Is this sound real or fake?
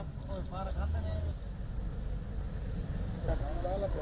real